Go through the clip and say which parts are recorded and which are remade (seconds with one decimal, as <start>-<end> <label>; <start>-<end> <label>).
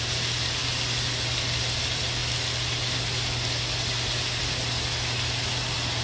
0.0-6.0 recorded